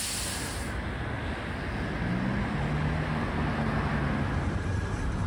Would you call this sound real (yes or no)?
yes